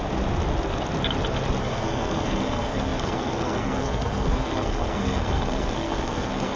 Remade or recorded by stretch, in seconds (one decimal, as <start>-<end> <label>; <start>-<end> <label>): 0.0-1.6 recorded; 1.6-6.6 remade